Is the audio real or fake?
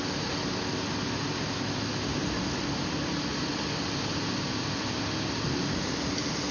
real